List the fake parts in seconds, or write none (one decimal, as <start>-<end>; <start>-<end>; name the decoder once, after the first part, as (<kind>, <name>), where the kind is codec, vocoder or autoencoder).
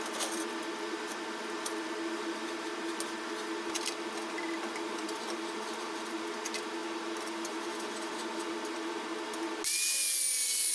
none